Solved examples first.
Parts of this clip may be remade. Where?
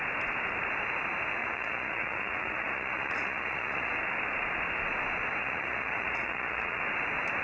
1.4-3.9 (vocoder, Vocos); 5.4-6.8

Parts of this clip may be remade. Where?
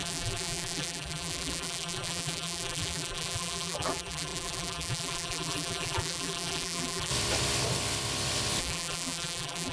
0.0-7.1 (vocoder, BigVGAN v2); 8.6-9.7